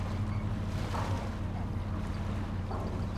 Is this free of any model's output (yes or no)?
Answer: yes